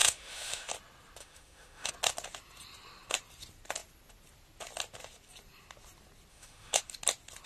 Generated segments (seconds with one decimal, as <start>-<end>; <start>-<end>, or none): 0.0-0.7; 1.2-1.9; 6.3-6.8